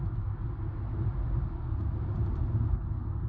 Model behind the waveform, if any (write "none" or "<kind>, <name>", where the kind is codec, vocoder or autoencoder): none